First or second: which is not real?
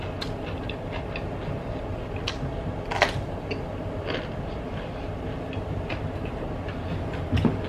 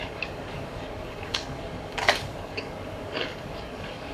second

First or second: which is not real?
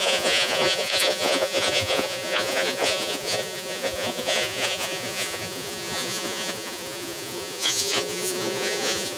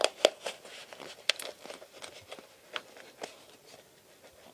first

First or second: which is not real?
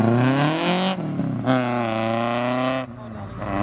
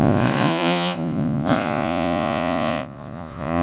second